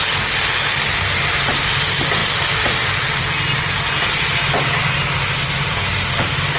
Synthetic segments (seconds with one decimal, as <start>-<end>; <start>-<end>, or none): none